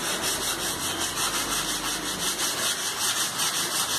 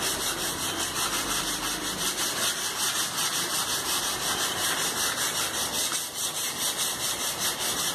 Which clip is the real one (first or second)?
first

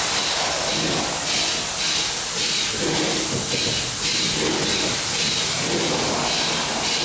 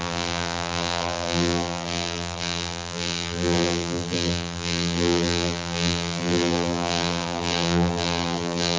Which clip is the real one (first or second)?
first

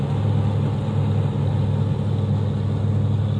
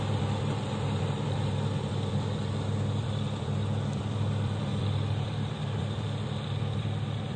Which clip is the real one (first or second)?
first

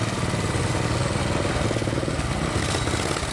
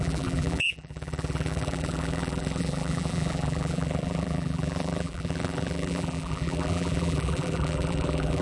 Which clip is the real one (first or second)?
first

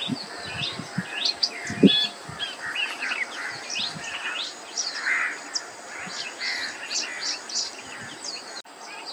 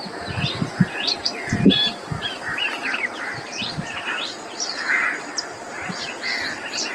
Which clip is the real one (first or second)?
first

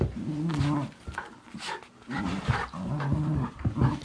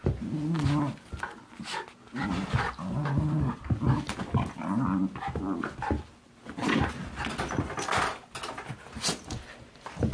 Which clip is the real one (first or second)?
second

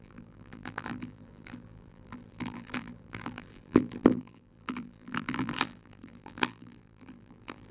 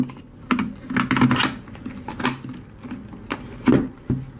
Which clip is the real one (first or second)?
second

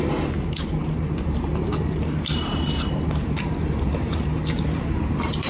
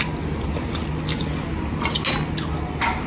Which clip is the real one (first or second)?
second